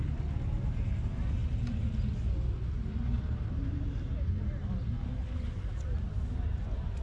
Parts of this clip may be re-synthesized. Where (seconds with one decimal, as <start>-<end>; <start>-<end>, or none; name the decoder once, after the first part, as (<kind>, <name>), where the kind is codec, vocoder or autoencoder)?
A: none